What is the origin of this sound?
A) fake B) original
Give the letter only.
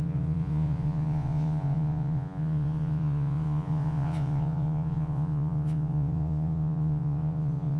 A